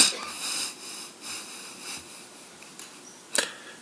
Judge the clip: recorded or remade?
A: recorded